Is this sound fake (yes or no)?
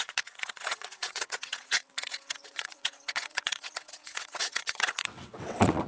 yes